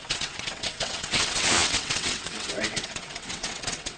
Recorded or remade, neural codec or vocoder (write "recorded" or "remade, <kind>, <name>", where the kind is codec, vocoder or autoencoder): remade, vocoder, WaveNeXt